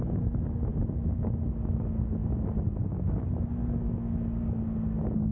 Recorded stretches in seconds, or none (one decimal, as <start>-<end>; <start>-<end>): 0.0-0.7; 1.3-5.3